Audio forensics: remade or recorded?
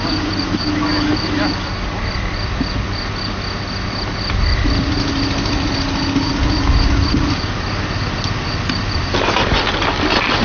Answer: recorded